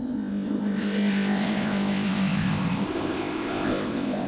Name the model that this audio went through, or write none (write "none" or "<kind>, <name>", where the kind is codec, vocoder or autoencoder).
codec, ZipCodec